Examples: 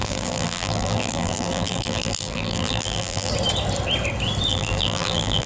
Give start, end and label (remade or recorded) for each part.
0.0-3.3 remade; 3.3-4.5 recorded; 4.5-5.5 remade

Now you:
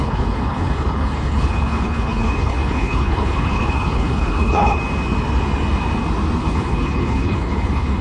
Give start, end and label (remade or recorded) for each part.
0.0-4.8 remade; 4.8-6.4 recorded; 6.4-8.0 remade